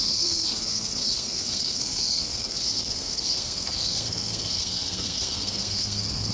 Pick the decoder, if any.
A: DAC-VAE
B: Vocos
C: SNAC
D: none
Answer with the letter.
C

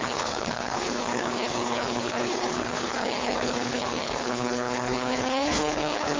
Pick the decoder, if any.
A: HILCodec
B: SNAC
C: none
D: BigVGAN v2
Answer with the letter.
A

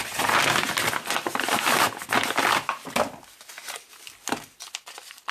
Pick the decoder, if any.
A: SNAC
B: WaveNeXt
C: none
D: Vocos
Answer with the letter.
C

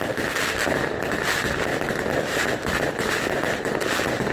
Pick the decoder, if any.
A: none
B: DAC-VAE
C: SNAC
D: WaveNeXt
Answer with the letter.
A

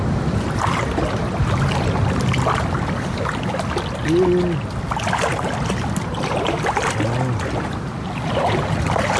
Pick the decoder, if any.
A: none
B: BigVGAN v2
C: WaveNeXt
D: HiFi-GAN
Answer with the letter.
A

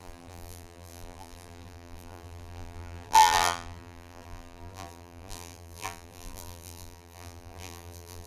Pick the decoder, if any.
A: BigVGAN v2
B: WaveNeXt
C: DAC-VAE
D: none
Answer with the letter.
A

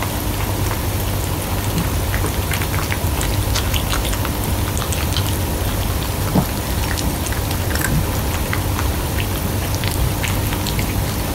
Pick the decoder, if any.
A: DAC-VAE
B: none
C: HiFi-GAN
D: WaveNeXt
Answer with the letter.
B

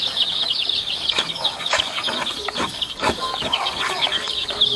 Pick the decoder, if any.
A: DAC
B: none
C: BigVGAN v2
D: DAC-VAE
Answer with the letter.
A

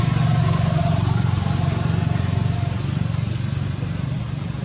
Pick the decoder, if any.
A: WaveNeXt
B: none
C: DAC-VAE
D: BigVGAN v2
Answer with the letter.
B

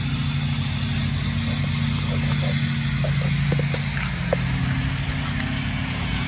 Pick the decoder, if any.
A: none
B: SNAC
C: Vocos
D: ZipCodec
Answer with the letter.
A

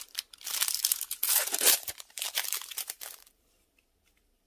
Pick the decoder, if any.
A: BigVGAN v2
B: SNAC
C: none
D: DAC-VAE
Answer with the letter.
A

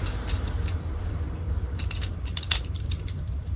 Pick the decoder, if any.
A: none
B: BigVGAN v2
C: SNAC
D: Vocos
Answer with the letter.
B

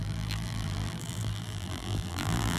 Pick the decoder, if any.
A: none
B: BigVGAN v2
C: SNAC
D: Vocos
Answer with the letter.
B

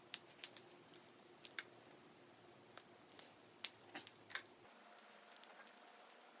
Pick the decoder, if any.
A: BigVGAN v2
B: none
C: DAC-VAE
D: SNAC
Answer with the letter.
B